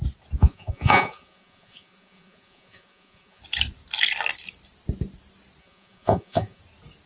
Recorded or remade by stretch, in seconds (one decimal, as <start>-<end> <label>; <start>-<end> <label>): 0.0-0.4 recorded; 0.4-3.4 remade; 3.4-5.6 recorded; 5.6-6.6 remade; 6.6-7.1 recorded